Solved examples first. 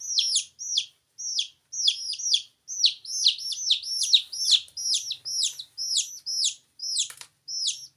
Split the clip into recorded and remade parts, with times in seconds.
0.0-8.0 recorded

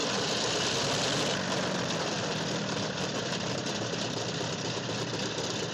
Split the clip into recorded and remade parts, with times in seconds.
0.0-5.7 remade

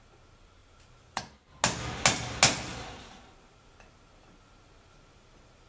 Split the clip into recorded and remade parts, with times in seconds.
0.0-0.6 recorded; 0.6-1.2 remade; 1.2-2.7 recorded; 2.7-3.7 remade; 3.7-5.7 recorded

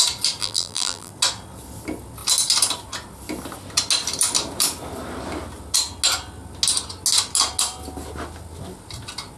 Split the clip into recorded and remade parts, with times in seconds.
0.0-0.4 recorded; 0.4-1.1 remade; 1.1-9.4 recorded

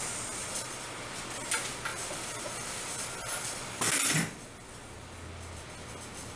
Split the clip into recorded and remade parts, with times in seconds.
0.0-0.4 recorded; 0.4-1.0 remade; 1.0-1.9 recorded; 1.9-3.9 remade; 3.9-6.4 recorded